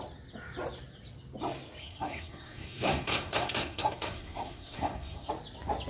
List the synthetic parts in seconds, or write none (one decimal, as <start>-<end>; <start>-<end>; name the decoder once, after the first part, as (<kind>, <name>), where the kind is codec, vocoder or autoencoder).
1.8-5.3 (codec, SNAC)

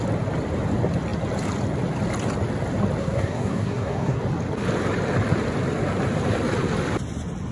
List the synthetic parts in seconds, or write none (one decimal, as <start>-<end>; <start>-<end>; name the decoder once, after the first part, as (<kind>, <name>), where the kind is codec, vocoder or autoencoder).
3.0-4.2 (codec, SNAC)